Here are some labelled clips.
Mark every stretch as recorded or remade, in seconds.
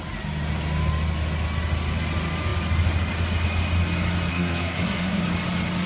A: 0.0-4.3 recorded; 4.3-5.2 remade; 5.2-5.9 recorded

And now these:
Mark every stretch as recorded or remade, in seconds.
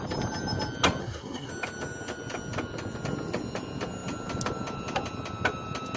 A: 0.0-1.0 recorded; 1.0-1.5 remade; 1.5-6.0 recorded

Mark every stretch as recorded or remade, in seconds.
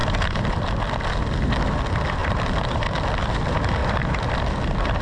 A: 0.0-0.7 remade; 0.7-2.2 recorded; 2.2-3.0 remade; 3.0-3.8 recorded; 3.8-4.3 remade; 4.3-5.0 recorded